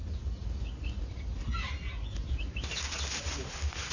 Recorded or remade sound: recorded